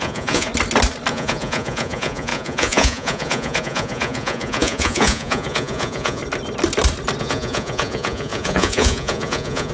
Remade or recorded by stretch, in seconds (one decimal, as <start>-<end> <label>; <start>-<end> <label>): 0.0-0.5 remade; 0.5-1.1 recorded; 1.1-6.2 remade; 6.2-7.2 recorded; 7.2-9.7 remade